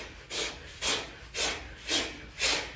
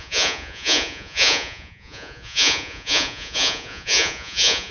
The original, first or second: first